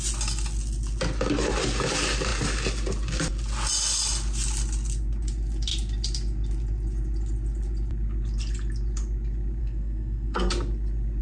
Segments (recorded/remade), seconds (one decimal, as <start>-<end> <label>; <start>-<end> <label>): 0.0-9.6 recorded; 9.6-10.5 remade; 10.5-11.2 recorded